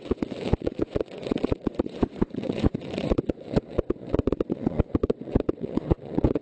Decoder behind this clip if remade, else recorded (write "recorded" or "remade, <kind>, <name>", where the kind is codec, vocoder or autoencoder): remade, vocoder, WaveNeXt